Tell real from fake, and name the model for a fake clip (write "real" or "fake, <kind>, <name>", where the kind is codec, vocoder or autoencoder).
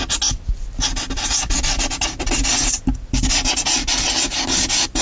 real